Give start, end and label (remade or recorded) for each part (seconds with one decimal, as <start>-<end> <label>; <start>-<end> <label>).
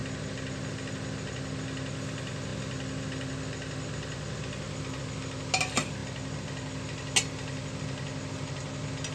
0.0-9.1 recorded